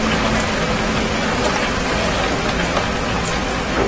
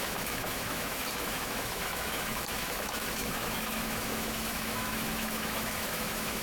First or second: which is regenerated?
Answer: second